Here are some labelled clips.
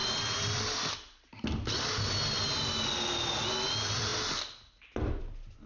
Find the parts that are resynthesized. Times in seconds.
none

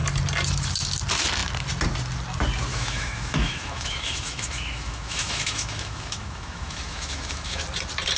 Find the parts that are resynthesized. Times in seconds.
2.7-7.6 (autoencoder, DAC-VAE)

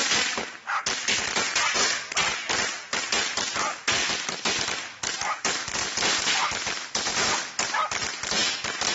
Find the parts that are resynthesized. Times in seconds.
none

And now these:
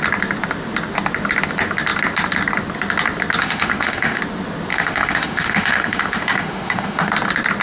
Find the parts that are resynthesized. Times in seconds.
3.4-4.2 (autoencoder, DAC-VAE); 4.7-7.1